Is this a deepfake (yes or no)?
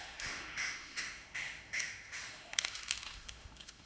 yes